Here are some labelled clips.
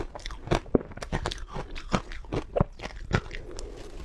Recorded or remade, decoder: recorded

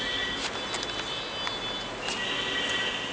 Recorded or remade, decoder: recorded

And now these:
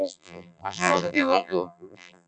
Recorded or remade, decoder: remade, vocoder, BigVGAN v2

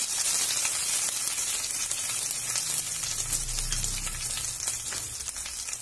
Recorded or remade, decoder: recorded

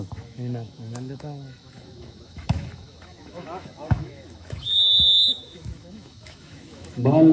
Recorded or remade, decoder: remade, autoencoder, DAC-VAE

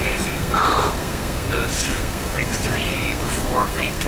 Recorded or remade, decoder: remade, codec, SNAC